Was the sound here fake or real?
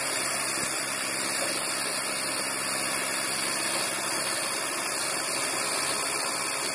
real